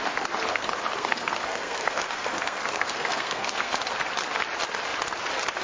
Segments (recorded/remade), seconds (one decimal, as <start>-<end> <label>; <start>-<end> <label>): 0.0-0.5 recorded; 0.5-3.8 remade; 3.8-5.6 recorded